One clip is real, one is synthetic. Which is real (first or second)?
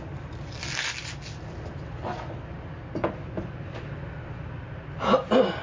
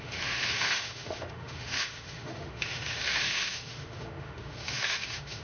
first